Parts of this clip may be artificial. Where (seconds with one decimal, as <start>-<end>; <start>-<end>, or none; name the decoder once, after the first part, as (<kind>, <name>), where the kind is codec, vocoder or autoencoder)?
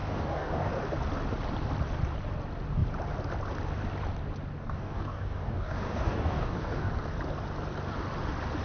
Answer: 0.0-0.7 (codec, DAC); 4.6-6.9